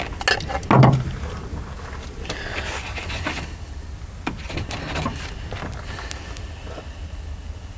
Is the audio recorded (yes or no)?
yes